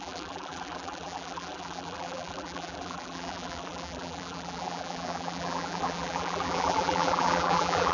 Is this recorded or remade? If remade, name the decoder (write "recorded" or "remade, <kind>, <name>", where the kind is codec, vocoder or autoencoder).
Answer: remade, vocoder, BigVGAN v2